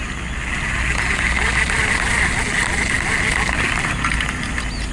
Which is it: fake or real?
real